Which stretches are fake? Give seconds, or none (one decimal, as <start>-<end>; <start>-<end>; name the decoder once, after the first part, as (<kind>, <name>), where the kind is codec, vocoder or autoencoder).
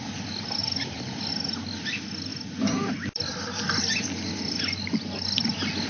none